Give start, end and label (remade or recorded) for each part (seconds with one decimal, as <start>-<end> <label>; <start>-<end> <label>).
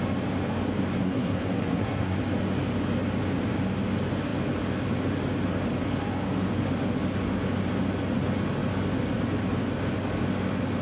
0.0-1.0 recorded; 1.0-2.2 remade; 2.2-10.8 recorded